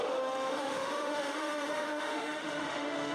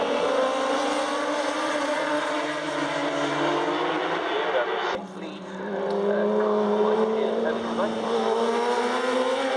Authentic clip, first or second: second